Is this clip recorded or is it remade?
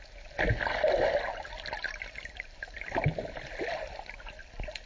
recorded